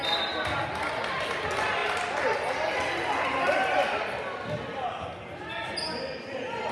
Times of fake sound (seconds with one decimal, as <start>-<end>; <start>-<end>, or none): none